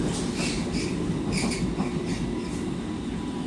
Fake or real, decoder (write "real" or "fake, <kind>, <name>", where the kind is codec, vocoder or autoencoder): real